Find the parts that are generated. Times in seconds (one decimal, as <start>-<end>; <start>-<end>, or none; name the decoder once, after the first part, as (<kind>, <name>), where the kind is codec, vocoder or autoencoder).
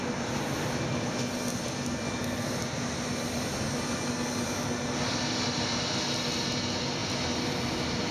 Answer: none